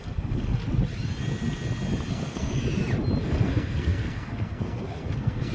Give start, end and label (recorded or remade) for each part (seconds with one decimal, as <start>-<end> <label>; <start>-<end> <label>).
0.0-0.6 remade; 0.6-2.1 recorded; 2.1-2.6 remade; 2.6-3.2 recorded; 3.2-5.5 remade